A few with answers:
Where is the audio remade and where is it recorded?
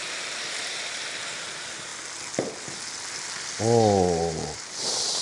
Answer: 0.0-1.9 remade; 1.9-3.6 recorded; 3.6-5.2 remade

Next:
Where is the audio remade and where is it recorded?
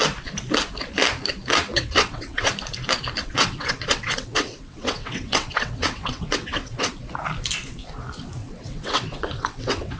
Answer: 0.0-1.7 recorded; 1.7-2.5 remade; 2.5-3.2 recorded; 3.2-6.9 remade; 6.9-8.4 recorded; 8.4-10.0 remade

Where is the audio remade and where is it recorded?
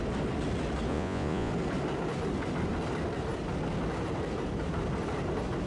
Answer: 0.0-0.9 recorded; 0.9-1.5 remade; 1.5-5.7 recorded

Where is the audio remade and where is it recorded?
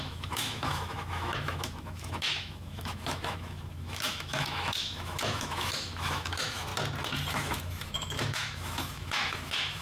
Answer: 0.0-6.7 remade; 6.7-7.3 recorded; 7.3-9.8 remade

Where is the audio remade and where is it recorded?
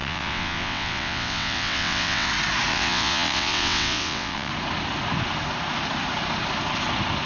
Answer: 0.0-2.3 remade; 2.3-2.7 recorded; 2.7-4.5 remade; 4.5-7.3 recorded